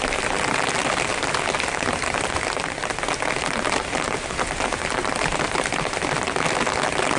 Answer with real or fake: real